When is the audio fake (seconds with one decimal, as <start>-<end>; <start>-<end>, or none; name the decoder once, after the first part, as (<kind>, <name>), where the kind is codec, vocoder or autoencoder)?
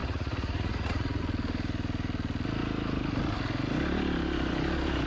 0.0-1.2 (vocoder, Vocos)